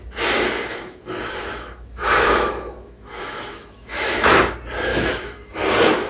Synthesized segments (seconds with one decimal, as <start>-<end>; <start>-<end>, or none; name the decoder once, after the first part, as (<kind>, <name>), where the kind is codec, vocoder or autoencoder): 0.7-4.4 (autoencoder, DAC-VAE); 4.9-5.5